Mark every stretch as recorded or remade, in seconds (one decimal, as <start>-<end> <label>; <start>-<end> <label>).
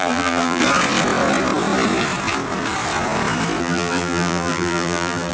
0.0-0.6 remade; 0.6-3.6 recorded; 3.6-5.3 remade